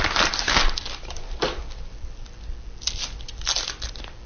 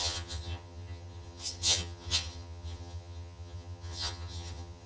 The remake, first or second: second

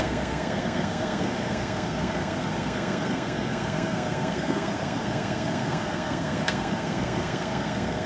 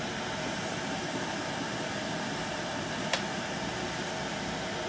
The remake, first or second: first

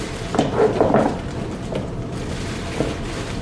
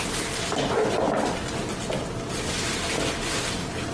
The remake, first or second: first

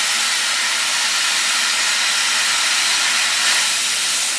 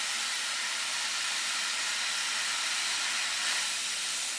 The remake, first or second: second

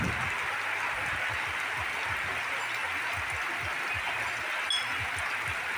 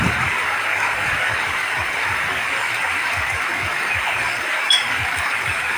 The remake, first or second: second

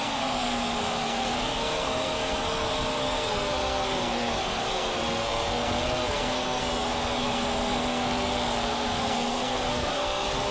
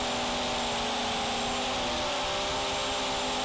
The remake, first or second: first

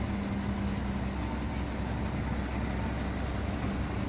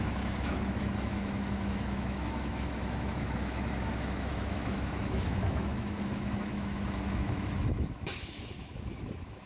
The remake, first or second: second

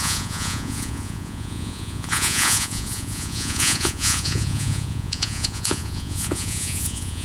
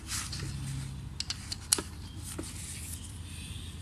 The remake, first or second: first